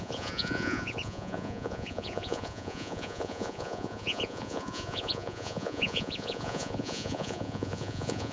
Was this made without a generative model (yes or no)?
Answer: no